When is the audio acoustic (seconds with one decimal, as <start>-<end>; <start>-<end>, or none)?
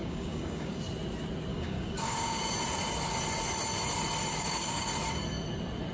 0.8-1.5; 2.5-4.3; 4.9-5.9